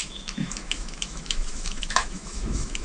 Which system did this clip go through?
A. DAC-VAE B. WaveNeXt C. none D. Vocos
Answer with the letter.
A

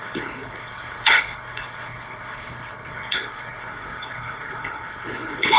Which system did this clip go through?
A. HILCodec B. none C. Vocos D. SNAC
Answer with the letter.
A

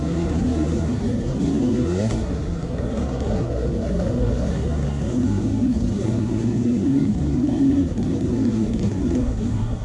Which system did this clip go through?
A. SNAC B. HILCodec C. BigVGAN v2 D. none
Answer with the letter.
A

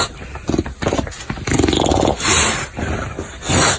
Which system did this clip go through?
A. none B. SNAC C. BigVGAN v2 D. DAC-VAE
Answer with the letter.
A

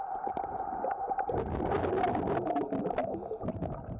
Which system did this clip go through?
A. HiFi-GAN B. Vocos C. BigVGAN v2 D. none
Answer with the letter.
D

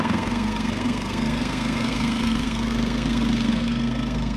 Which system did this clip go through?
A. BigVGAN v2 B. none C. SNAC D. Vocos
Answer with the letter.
C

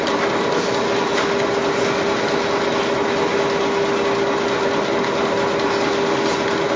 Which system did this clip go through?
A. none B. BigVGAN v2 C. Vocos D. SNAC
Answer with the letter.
A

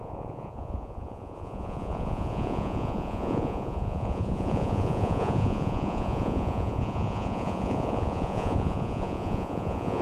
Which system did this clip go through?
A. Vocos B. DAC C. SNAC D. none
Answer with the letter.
A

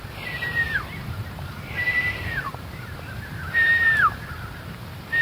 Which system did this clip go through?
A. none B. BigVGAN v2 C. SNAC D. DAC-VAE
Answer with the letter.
B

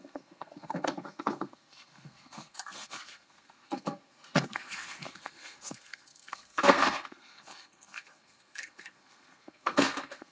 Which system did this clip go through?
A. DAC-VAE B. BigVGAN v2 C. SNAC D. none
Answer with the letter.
C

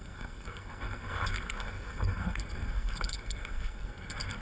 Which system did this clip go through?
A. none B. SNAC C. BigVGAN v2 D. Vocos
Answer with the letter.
B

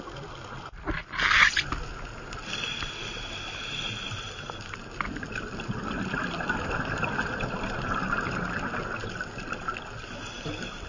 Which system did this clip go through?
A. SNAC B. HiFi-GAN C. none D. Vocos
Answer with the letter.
C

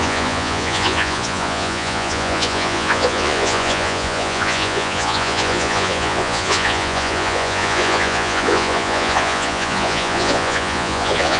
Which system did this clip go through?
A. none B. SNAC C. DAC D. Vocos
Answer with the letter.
D